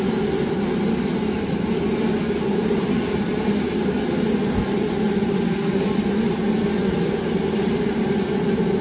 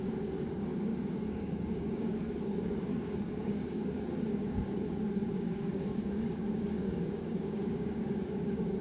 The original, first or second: first